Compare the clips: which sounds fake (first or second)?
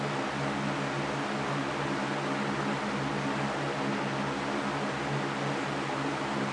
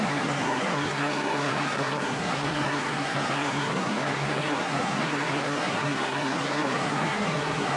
second